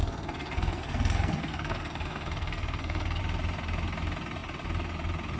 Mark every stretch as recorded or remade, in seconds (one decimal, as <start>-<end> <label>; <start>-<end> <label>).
0.0-3.2 remade; 3.2-5.4 recorded

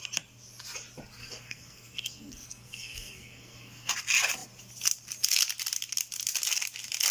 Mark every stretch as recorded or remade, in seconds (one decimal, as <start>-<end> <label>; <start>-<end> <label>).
0.0-1.2 recorded; 1.2-3.9 remade; 3.9-7.1 recorded

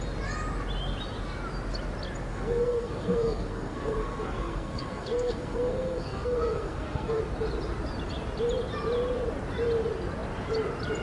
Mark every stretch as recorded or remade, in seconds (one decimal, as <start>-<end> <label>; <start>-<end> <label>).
0.0-2.3 recorded; 2.3-7.2 remade; 7.2-11.0 recorded

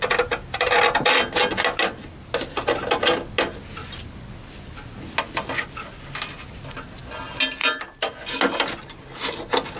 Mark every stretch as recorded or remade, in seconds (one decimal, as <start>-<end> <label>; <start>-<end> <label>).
0.0-9.8 recorded

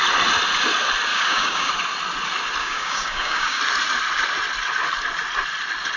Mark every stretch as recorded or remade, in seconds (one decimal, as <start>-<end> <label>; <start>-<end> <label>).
0.0-1.1 recorded; 1.1-1.7 remade; 1.7-2.6 recorded; 2.6-3.6 remade; 3.6-6.0 recorded